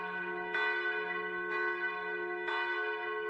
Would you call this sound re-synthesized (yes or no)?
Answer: no